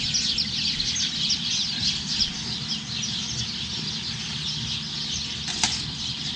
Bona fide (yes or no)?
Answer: yes